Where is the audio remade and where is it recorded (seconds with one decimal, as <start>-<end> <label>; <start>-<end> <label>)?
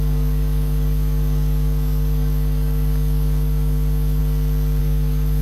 0.0-4.2 remade; 4.2-4.8 recorded; 4.8-5.4 remade